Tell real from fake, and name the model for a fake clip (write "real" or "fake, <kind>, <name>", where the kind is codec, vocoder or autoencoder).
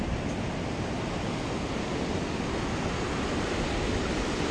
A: real